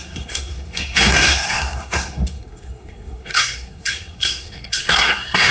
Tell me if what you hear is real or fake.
fake